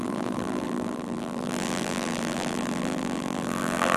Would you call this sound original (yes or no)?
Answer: no